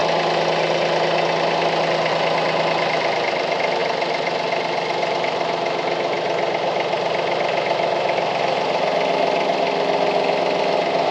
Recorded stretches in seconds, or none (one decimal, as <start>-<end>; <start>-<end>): 0.0-11.1